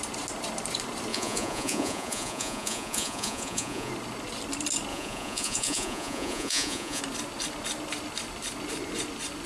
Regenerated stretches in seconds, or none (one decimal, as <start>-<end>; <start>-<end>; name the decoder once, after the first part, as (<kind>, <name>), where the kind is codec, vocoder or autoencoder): 1.1-3.9 (vocoder, Vocos); 4.9-7.0